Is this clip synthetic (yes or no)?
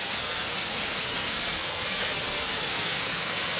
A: yes